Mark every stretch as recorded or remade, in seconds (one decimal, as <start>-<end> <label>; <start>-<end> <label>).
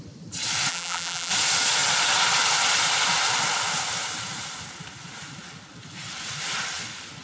0.0-0.7 recorded; 0.7-1.3 remade; 1.3-7.2 recorded